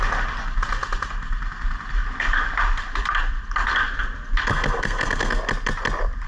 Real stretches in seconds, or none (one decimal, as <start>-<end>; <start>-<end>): 0.0-4.5; 5.4-6.3

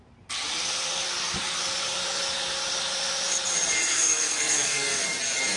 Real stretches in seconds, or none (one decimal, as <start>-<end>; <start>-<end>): 0.0-3.9; 5.0-5.6

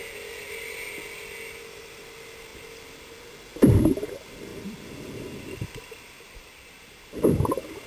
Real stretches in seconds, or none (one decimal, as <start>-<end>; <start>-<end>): 1.6-2.5; 3.2-4.5; 5.8-7.9

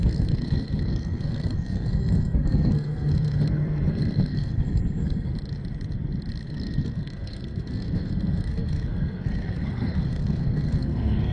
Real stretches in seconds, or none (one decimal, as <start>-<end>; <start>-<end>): 5.3-6.5

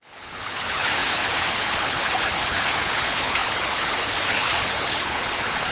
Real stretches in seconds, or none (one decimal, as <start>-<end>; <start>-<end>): none

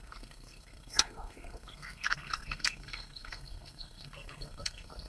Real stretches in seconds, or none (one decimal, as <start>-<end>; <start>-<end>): none